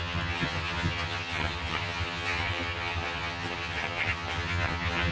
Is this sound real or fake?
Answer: fake